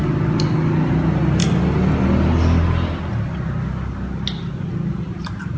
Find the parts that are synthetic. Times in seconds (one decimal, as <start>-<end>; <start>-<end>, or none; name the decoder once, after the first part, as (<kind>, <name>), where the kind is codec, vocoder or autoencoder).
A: none